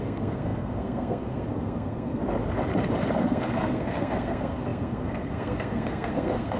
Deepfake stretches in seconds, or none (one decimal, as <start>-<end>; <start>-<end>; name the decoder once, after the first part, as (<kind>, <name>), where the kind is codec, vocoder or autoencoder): 0.0-2.2 (codec, SNAC); 3.2-6.6